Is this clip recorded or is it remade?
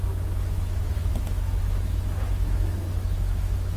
remade